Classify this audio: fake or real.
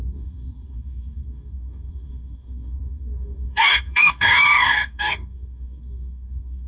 fake